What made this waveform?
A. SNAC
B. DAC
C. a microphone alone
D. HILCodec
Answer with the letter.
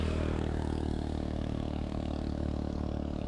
B